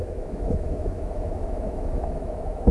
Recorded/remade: remade